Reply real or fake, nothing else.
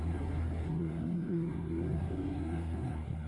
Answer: fake